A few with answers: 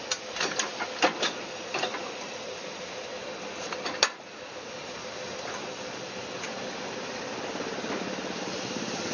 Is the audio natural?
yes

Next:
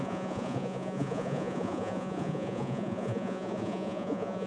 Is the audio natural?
no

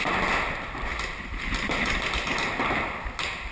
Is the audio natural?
yes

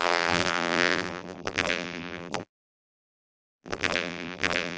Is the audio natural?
no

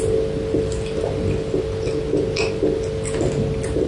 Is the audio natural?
yes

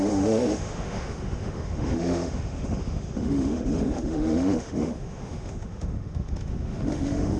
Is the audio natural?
no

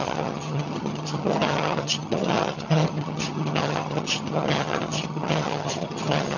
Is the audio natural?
no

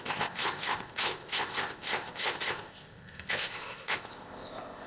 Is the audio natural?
no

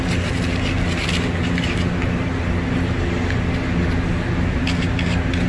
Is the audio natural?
yes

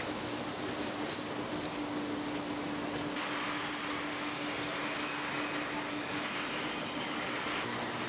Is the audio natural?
yes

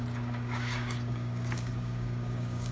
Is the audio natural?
no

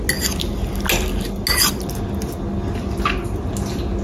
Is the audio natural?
yes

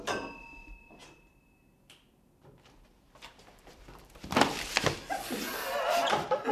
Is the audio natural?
yes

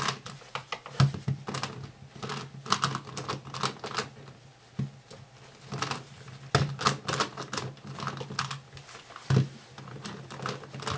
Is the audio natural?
yes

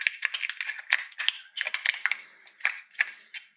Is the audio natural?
yes